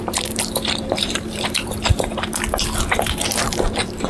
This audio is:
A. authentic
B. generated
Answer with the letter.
B